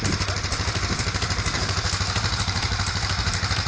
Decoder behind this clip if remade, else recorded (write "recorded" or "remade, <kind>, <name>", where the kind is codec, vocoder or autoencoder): remade, vocoder, BigVGAN v2